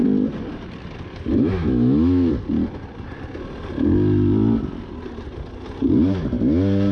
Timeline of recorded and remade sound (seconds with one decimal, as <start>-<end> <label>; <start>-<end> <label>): 0.0-1.3 recorded; 1.3-2.3 remade; 2.3-6.9 recorded